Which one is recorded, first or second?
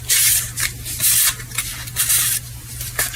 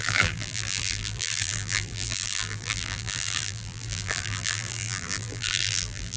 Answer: first